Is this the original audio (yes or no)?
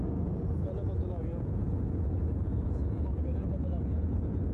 no